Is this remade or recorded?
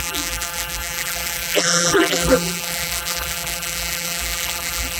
remade